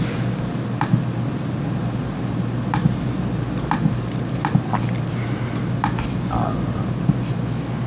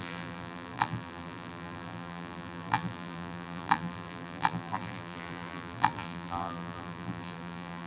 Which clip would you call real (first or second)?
first